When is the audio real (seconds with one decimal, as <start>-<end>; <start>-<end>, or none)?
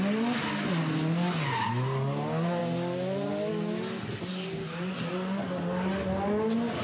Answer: 0.0-6.8